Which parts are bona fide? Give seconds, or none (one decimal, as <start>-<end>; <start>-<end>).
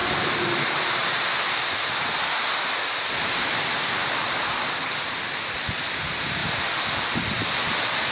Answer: 0.0-0.6; 1.0-5.8; 6.4-8.1